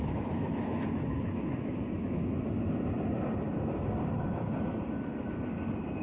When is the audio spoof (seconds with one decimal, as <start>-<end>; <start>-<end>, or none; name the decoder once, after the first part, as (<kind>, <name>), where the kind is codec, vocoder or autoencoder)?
0.0-2.2 (autoencoder, DAC-VAE)